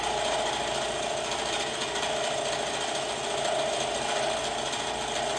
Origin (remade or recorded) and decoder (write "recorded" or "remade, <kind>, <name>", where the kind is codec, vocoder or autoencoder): recorded